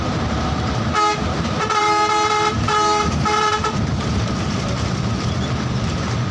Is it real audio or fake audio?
fake